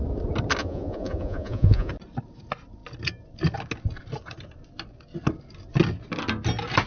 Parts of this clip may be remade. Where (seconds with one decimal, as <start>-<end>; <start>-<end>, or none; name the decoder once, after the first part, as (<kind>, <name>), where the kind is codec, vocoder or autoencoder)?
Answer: 0.6-1.9 (vocoder, Vocos)